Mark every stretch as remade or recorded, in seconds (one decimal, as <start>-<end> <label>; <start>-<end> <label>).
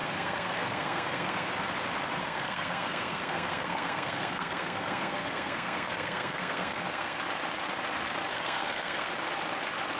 0.0-1.5 remade; 1.5-2.2 recorded; 2.2-7.2 remade; 7.2-8.3 recorded; 8.3-9.1 remade; 9.1-10.0 recorded